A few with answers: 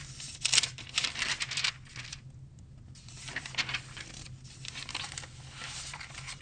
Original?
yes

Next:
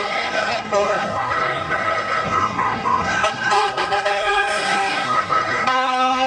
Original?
no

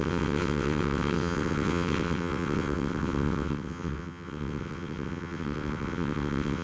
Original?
no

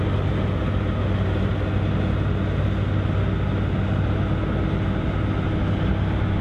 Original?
yes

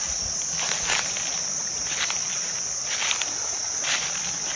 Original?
yes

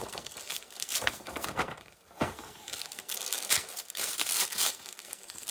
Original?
no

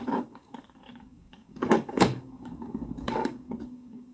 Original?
no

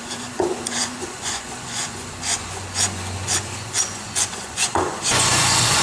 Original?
no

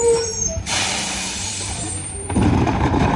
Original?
no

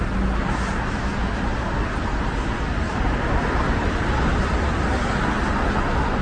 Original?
yes